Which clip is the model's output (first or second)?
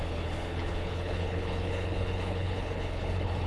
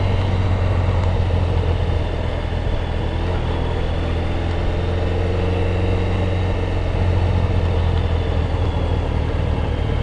first